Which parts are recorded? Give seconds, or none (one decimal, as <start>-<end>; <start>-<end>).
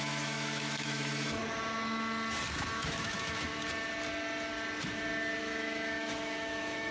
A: 1.4-2.5; 3.5-5.4